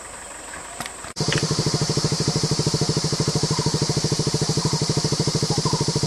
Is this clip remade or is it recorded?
remade